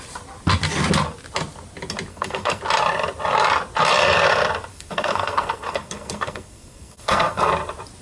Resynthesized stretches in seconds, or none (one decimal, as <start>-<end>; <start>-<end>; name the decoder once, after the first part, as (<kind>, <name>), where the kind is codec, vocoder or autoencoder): 2.1-2.6 (codec, SNAC); 4.7-7.5